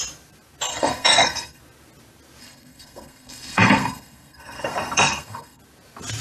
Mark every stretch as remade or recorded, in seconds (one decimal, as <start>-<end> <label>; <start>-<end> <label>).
0.0-0.7 recorded; 0.7-1.6 remade; 1.6-2.4 recorded; 2.4-5.6 remade; 5.6-6.2 recorded